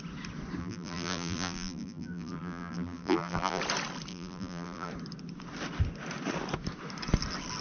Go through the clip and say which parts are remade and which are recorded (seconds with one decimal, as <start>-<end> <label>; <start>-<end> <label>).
0.0-0.6 recorded; 0.6-3.6 remade; 3.6-4.1 recorded; 4.1-4.9 remade; 4.9-7.6 recorded